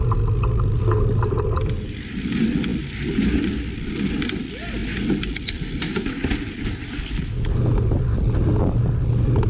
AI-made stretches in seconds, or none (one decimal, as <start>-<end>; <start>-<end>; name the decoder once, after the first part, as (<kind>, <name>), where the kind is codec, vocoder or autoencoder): none